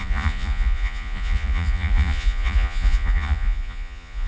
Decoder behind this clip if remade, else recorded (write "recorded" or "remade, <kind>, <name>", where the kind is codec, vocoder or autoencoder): remade, vocoder, Vocos